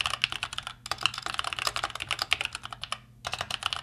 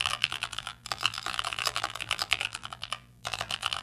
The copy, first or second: second